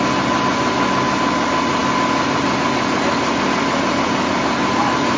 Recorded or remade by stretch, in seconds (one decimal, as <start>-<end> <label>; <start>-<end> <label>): 0.0-4.3 recorded; 4.3-5.2 remade